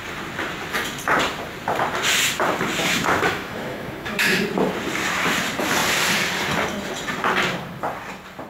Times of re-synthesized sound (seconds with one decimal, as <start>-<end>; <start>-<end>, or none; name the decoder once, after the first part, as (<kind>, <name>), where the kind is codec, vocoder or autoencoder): 2.8-4.4 (autoencoder, DAC-VAE)